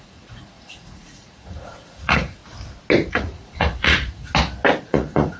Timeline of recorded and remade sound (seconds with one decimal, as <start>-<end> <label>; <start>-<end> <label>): 0.0-2.4 remade; 2.4-3.1 recorded; 3.1-4.3 remade; 4.3-4.8 recorded; 4.8-5.4 remade